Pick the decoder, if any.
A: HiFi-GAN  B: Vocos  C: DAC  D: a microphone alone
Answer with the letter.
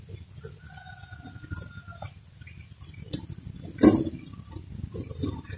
D